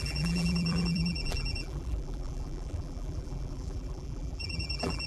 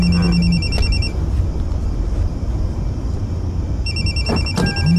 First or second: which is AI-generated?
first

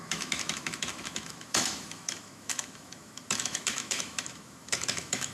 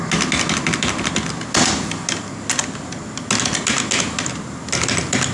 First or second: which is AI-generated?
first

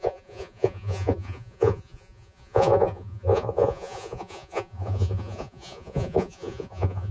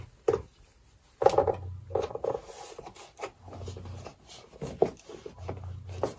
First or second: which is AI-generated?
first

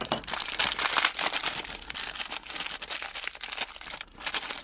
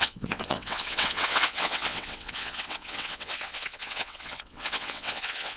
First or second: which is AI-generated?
second